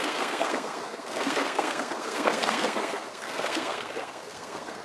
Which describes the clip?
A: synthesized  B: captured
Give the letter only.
A